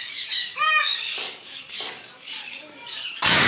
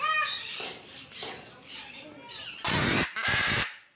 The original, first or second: second